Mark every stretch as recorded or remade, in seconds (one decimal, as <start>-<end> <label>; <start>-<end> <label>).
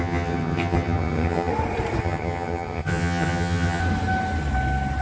0.0-1.5 remade; 1.5-2.0 recorded; 2.0-3.8 remade; 3.8-5.0 recorded